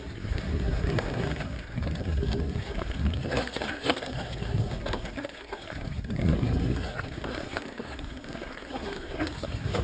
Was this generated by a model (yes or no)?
yes